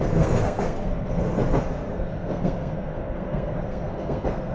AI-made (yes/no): yes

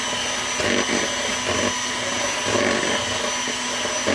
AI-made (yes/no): no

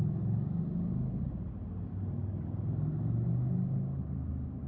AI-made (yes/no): no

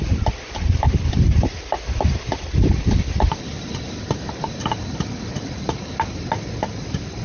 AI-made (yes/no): no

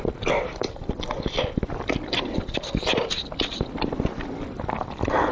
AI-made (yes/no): no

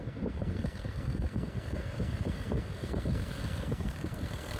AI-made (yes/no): yes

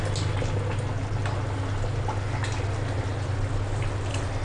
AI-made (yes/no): no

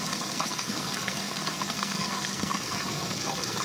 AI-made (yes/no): yes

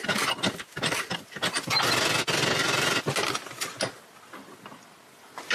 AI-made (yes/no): no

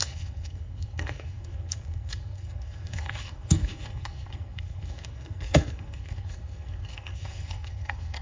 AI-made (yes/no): yes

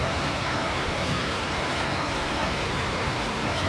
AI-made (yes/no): yes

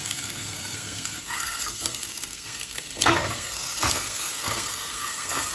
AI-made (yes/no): yes